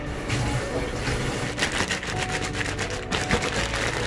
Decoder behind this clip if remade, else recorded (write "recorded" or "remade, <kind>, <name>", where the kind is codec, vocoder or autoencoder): recorded